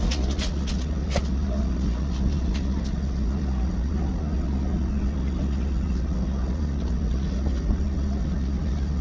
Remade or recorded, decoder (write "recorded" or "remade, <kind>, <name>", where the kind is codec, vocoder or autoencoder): remade, vocoder, Vocos